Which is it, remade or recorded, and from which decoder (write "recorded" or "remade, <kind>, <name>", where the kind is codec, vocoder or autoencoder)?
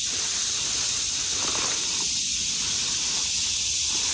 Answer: recorded